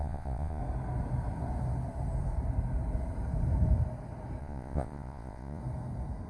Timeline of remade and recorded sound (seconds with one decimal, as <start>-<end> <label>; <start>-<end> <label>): 0.0-0.6 remade; 0.6-4.4 recorded; 4.4-5.6 remade; 5.6-6.3 recorded